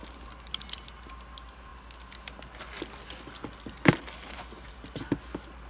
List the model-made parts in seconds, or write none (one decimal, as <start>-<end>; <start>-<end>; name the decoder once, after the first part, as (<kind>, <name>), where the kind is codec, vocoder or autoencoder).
none